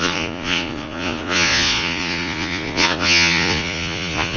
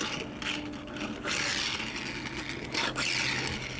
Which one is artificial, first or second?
first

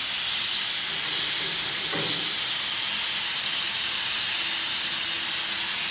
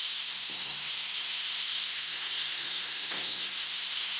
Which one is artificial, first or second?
second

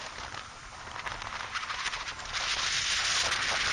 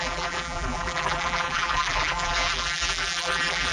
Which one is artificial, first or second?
second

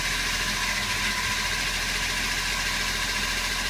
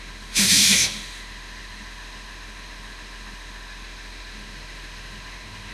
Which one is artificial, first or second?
second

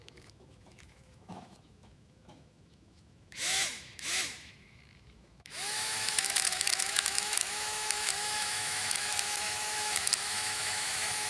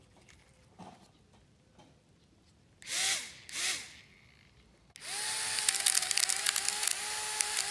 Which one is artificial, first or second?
first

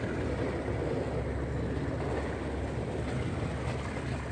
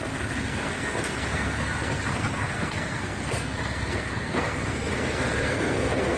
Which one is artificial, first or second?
second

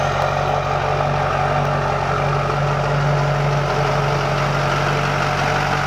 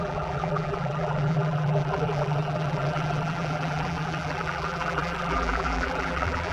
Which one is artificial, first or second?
second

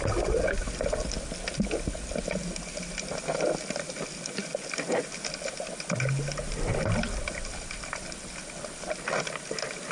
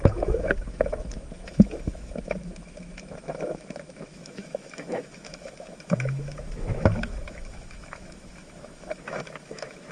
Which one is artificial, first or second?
second